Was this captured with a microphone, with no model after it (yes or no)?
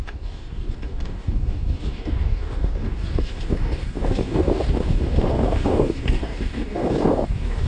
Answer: no